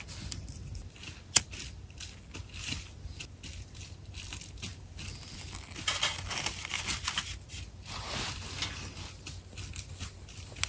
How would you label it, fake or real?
real